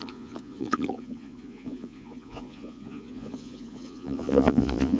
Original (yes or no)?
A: no